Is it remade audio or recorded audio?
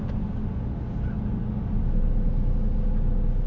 recorded